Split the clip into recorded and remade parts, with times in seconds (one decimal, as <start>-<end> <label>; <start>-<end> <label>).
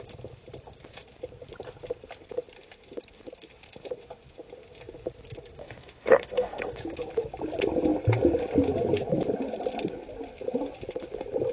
0.0-5.6 recorded; 5.6-6.7 remade; 6.7-11.5 recorded